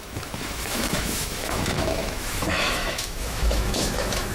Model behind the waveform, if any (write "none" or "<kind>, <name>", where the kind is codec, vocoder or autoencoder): autoencoder, DAC-VAE